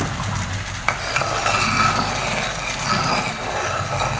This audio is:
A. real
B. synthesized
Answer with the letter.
A